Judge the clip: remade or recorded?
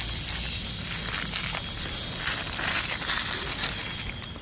recorded